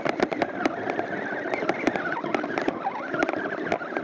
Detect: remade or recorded recorded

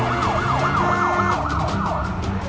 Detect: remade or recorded recorded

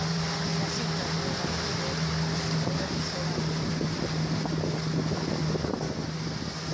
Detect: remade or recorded recorded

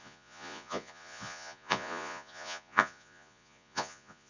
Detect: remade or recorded remade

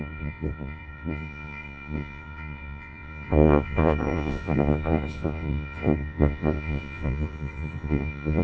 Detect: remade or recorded remade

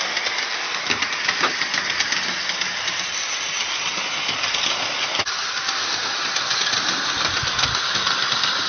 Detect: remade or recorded recorded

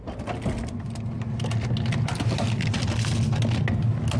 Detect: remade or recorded recorded